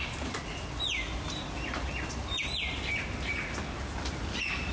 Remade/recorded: recorded